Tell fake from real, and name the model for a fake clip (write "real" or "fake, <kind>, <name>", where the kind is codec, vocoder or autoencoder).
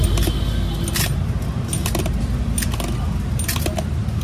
real